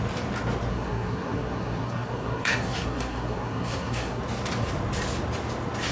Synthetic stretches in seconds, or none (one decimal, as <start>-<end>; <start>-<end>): 0.7-4.2